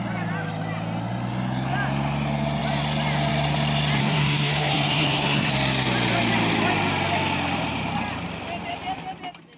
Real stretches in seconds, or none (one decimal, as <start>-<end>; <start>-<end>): 0.0-4.0; 5.5-9.6